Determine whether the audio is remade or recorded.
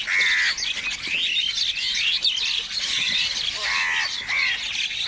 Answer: recorded